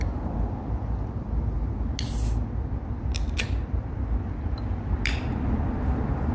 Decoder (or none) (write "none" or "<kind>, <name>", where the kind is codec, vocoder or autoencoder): none